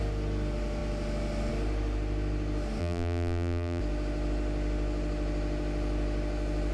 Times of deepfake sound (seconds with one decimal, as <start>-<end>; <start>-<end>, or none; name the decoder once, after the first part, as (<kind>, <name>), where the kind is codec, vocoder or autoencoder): 2.8-3.8 (vocoder, BigVGAN v2)